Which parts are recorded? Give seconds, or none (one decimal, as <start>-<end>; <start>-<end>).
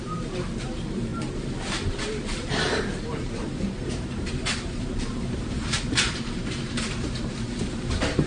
none